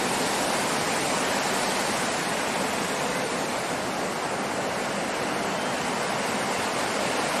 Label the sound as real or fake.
real